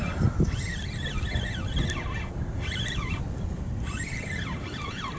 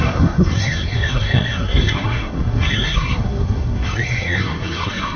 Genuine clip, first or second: first